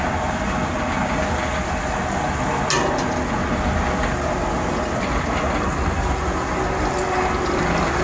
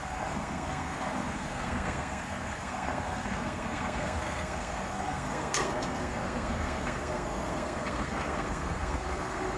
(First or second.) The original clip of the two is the first